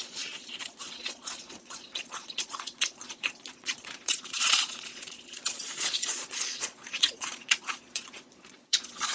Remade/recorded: remade